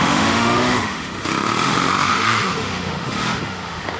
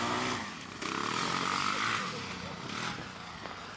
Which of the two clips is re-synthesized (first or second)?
first